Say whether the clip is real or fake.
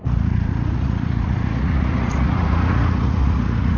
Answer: fake